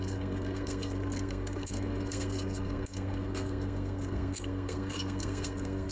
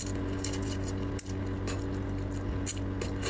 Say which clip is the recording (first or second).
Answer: second